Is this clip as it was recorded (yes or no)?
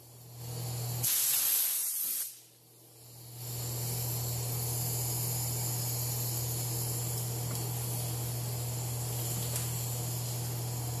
yes